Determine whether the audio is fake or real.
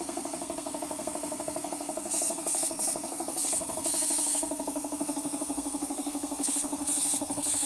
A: fake